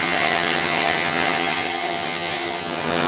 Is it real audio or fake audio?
fake